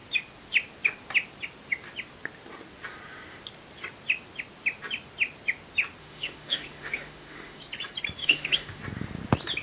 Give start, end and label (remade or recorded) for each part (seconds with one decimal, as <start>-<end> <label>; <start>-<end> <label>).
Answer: 0.0-6.0 recorded; 6.0-7.6 remade; 7.6-8.2 recorded; 8.2-8.8 remade; 8.8-9.6 recorded

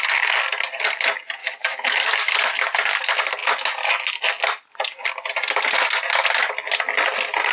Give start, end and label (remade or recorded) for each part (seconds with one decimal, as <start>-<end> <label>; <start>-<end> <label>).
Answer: 0.0-1.4 recorded; 1.4-2.3 remade; 2.3-7.5 recorded

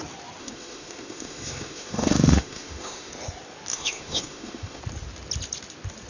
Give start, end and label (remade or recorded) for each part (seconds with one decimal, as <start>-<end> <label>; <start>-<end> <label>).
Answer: 0.0-0.4 recorded; 0.4-3.1 remade; 3.1-3.7 recorded; 3.7-4.8 remade; 4.8-6.1 recorded